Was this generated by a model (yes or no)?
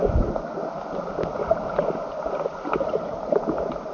no